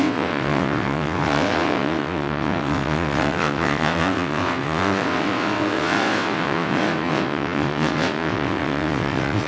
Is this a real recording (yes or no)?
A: no